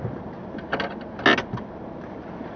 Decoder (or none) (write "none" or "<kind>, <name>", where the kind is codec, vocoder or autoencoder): none